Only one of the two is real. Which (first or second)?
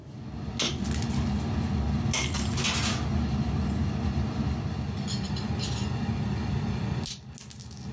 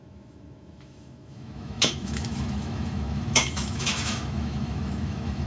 first